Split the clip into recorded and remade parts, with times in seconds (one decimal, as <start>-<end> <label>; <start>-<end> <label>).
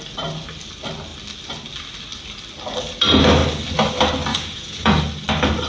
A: 0.0-4.3 recorded; 4.3-5.0 remade; 5.0-5.7 recorded